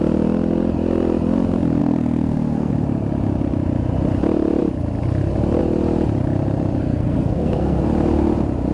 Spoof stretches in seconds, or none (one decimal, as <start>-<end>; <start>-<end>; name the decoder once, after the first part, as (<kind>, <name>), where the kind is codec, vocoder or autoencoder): 1.8-2.7 (codec, SNAC); 6.8-7.8